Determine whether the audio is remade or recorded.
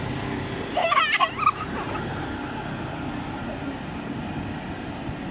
recorded